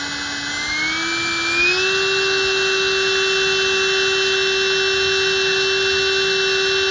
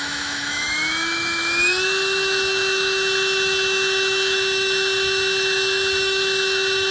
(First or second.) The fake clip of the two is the second